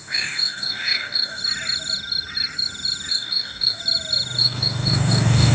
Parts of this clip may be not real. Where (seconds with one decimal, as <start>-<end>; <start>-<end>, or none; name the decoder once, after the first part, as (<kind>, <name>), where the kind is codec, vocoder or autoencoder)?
0.0-1.4 (codec, DAC); 3.1-3.8; 4.4-5.5